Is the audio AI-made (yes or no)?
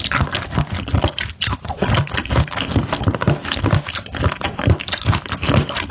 no